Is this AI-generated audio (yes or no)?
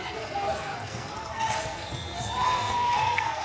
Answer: yes